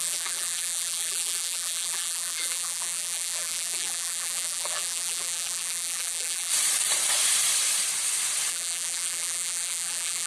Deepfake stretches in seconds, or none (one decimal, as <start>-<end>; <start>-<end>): 0.0-6.5; 8.5-10.3